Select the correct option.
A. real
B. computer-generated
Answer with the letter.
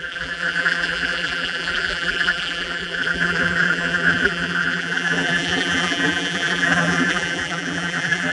B